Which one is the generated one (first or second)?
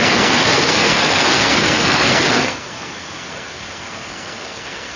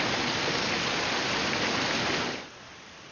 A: first